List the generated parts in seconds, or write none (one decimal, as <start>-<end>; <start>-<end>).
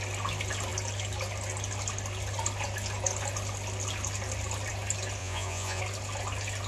5.2-5.8